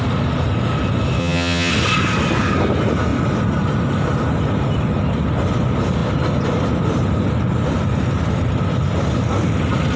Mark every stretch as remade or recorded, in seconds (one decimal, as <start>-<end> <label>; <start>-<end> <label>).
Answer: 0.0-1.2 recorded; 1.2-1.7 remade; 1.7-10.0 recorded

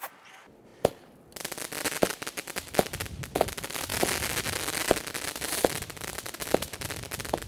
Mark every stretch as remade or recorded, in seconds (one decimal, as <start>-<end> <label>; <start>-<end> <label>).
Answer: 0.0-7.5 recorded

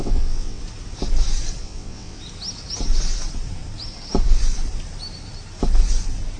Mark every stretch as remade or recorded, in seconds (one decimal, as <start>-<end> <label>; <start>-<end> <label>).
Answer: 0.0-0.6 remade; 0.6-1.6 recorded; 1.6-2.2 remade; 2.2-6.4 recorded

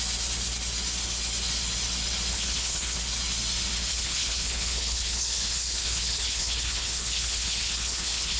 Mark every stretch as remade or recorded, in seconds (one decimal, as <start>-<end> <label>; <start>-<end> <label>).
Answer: 0.0-2.3 recorded; 2.3-3.0 remade; 3.0-3.9 recorded; 3.9-8.4 remade

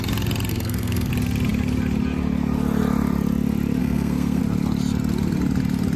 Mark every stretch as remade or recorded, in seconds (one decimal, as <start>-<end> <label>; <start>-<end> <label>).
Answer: 0.0-0.5 recorded; 0.5-1.1 remade; 1.1-3.8 recorded; 3.8-4.4 remade; 4.4-6.0 recorded

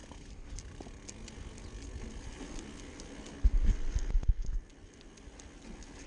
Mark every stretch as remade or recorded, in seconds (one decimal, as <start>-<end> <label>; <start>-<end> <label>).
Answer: 0.0-6.1 recorded

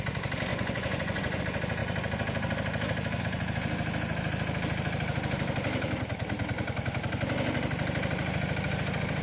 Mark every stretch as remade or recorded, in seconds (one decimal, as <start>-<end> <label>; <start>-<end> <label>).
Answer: 0.0-0.5 recorded; 0.5-1.4 remade; 1.4-9.2 recorded